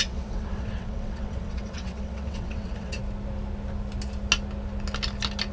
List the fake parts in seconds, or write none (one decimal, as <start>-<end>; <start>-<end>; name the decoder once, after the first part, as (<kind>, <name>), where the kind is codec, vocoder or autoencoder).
0.0-3.0 (vocoder, WaveNeXt)